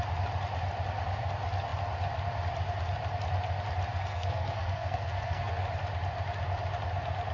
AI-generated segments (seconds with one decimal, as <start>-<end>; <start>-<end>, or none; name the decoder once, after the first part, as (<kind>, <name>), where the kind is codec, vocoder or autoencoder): 3.9-5.7 (codec, SNAC)